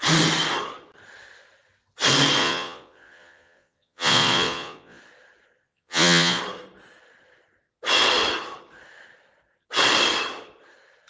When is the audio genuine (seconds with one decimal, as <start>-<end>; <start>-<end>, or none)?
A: 0.0-2.4; 5.0-5.7; 6.4-11.1